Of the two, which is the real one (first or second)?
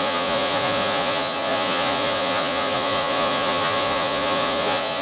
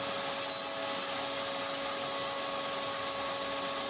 second